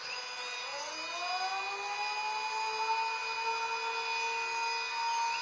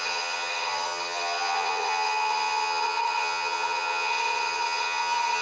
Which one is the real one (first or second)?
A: first